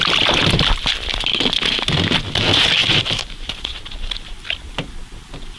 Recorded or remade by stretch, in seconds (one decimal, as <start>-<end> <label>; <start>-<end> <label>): 0.0-2.8 recorded; 2.8-4.1 remade; 4.1-5.6 recorded